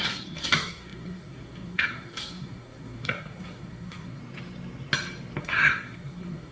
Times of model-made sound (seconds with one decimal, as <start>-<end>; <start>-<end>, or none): 0.0-4.2; 5.4-6.5

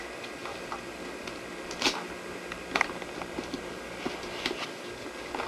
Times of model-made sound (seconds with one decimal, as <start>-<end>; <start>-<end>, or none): none

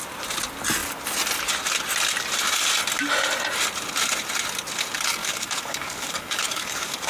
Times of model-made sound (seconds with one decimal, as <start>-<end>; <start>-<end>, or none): 5.2-7.1

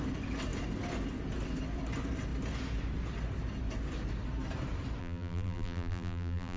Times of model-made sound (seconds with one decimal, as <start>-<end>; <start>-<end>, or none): 5.0-6.6

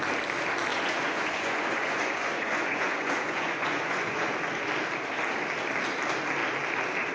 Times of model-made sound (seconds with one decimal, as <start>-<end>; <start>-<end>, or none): 0.7-4.3

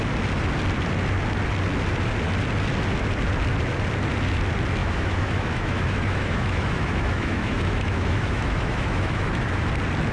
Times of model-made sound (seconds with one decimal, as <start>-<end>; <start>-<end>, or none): 4.8-9.7

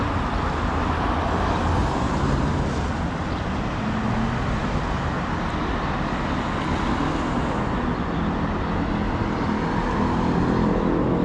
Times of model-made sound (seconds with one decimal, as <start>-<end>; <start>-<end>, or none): 1.8-4.1

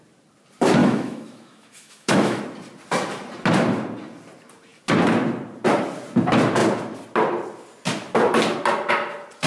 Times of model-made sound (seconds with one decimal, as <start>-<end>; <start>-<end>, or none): 0.8-2.4